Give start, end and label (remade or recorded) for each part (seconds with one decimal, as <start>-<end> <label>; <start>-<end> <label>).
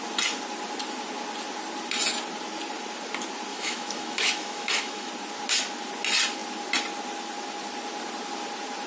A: 0.0-3.5 recorded; 3.5-5.1 remade; 5.1-8.9 recorded